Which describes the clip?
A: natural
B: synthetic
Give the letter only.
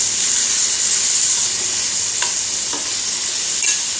A